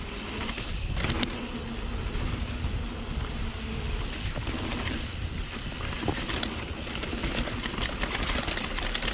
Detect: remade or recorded recorded